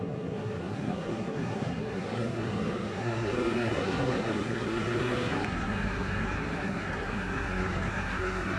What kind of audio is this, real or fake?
fake